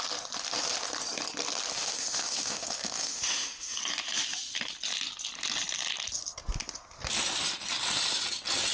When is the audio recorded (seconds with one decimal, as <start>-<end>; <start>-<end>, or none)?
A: 0.0-1.7; 3.8-8.7